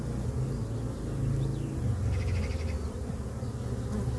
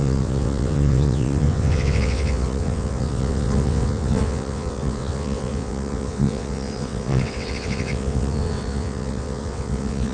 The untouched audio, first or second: first